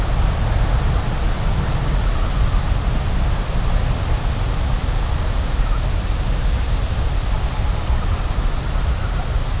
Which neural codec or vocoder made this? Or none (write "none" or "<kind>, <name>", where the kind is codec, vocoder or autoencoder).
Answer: none